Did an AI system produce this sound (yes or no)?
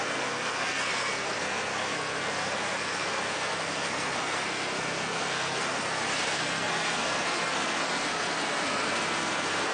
yes